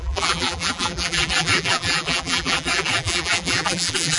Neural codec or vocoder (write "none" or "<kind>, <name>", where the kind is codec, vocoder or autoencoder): vocoder, BigVGAN v2